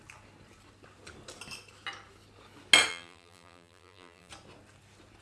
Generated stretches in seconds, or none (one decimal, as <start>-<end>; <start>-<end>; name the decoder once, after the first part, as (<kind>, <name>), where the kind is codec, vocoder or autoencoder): 2.9-4.3 (vocoder, BigVGAN v2)